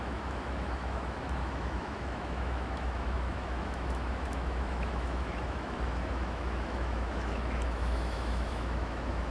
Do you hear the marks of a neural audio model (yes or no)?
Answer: yes